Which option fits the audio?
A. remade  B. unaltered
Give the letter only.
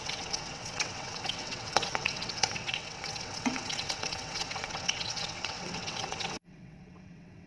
A